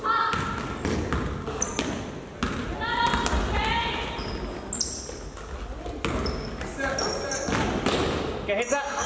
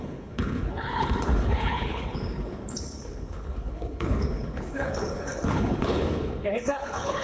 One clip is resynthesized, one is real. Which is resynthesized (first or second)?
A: second